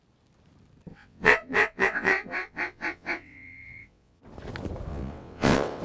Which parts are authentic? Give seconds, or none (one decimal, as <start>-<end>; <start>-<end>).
0.0-0.9; 4.2-4.9